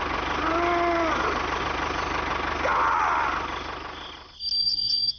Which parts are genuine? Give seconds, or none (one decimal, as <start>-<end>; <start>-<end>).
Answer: 0.0-4.6